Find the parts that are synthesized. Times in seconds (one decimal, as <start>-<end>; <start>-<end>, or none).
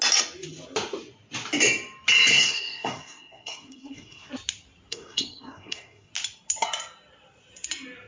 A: 2.3-4.3; 4.9-6.1